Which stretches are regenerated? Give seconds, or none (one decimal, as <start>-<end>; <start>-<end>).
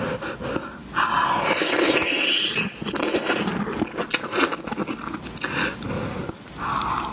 none